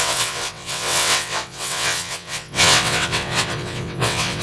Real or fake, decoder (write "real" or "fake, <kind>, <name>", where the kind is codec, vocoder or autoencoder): fake, vocoder, WaveNeXt